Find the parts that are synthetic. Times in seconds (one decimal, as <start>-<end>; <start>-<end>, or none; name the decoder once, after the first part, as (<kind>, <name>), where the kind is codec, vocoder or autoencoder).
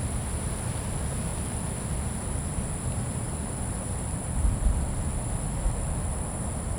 1.3-5.4 (vocoder, BigVGAN v2)